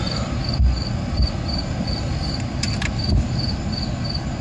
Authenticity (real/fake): real